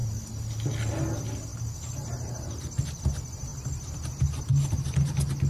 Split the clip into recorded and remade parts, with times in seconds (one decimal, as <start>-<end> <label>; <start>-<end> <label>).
0.0-1.5 recorded; 1.5-2.6 remade; 2.6-5.5 recorded